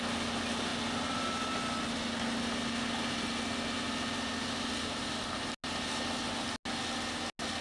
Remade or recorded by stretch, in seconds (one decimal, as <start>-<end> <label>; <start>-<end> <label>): 0.0-7.6 recorded